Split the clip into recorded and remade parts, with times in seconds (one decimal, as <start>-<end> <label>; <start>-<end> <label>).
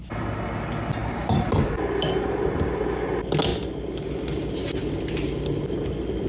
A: 0.0-1.0 recorded; 1.0-2.5 remade; 2.5-6.3 recorded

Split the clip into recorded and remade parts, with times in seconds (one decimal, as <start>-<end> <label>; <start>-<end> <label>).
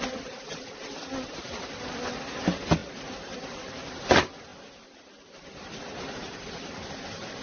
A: 0.0-2.8 recorded; 2.8-3.9 remade; 3.9-7.4 recorded